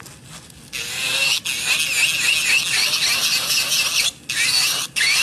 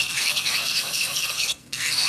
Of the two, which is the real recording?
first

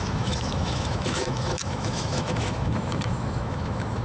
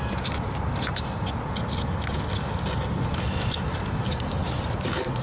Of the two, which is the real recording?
second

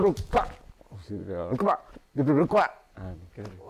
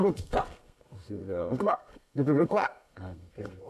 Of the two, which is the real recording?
first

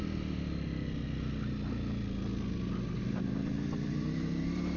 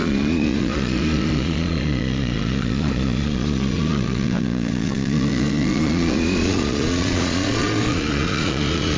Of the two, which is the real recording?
first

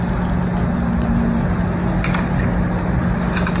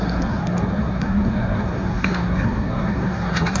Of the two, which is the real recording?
first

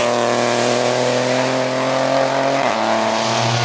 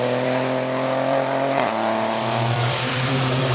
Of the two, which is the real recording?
first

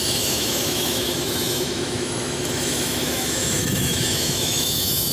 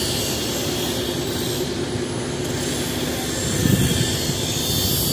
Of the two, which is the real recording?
second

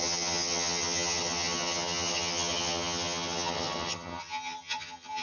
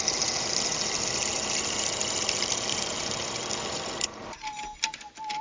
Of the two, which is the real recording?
second